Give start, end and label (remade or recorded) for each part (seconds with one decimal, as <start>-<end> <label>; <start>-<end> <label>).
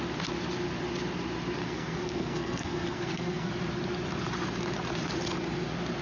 0.0-1.6 recorded; 1.6-3.5 remade; 3.5-6.0 recorded